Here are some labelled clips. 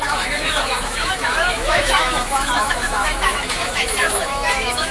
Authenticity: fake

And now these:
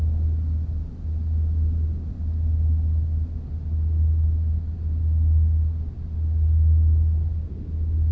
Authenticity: real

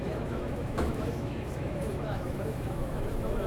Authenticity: fake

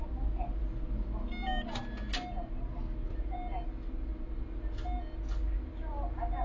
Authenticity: real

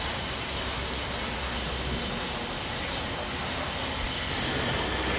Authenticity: real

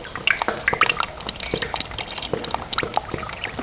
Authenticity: real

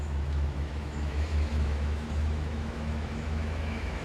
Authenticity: fake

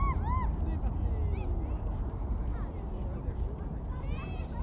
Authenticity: real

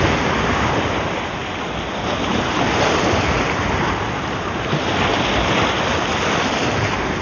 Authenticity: real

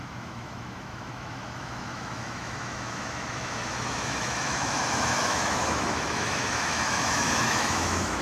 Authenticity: fake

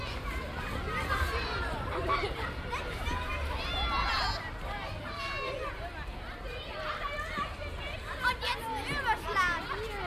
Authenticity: real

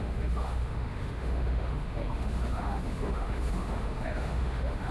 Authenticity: fake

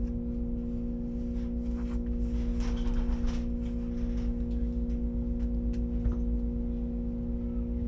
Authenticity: real